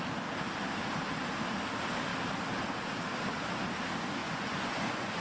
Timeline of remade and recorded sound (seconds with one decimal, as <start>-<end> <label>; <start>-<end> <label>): 0.0-4.2 recorded; 4.2-5.2 remade